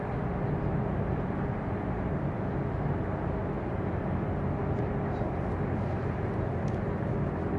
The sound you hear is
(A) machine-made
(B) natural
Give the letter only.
B